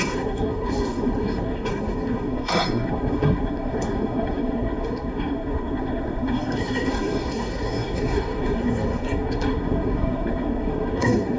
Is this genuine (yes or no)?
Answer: no